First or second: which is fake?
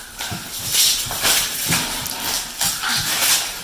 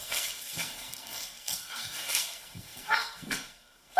second